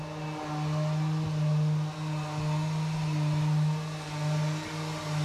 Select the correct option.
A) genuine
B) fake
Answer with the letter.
A